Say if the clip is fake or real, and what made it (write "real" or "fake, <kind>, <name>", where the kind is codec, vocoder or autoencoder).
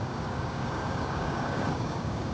fake, codec, DAC